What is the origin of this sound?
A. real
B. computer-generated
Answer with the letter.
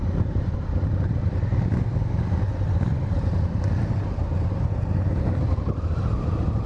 A